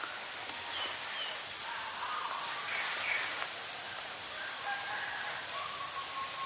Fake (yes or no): no